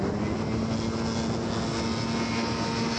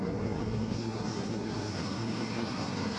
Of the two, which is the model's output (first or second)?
second